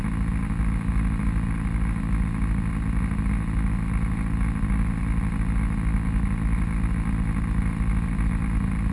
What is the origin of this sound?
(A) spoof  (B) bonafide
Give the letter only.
B